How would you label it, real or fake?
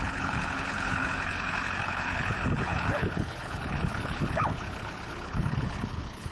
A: fake